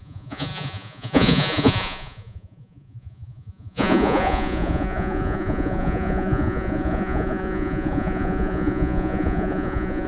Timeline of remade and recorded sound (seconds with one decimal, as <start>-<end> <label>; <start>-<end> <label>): 0.0-10.1 remade